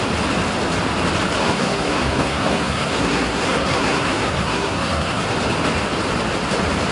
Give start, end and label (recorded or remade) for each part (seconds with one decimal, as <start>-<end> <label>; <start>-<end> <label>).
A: 0.0-1.4 recorded; 1.4-5.2 remade; 5.2-6.9 recorded